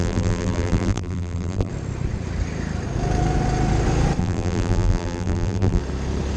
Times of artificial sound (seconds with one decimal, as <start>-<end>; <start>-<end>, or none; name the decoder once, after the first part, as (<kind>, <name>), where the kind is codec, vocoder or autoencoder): 0.0-1.7 (vocoder, BigVGAN v2); 4.2-5.8